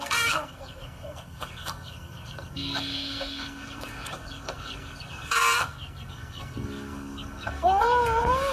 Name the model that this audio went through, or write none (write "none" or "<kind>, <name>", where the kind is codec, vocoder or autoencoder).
codec, SNAC